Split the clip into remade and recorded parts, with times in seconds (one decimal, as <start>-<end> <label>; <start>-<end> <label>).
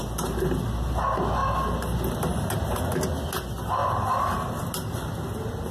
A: 0.0-5.7 recorded